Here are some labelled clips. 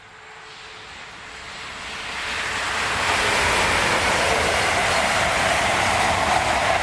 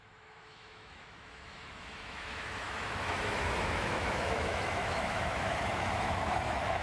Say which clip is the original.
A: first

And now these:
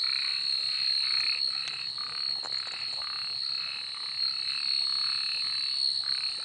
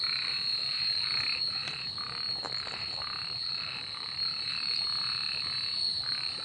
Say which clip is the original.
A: first